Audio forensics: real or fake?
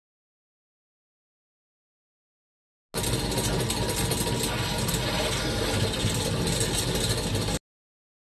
real